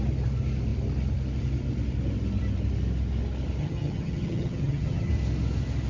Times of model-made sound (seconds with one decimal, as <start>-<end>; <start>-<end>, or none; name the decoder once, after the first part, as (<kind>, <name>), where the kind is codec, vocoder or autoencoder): 3.6-5.1 (vocoder, HiFi-GAN)